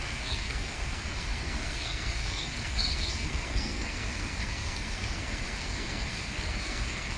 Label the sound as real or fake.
fake